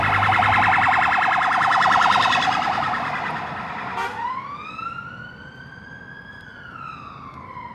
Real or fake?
fake